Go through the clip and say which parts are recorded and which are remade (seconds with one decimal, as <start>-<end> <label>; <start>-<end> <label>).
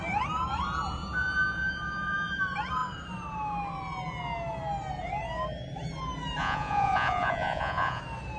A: 0.0-6.4 recorded; 6.4-8.0 remade; 8.0-8.4 recorded